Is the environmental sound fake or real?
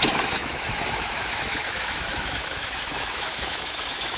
fake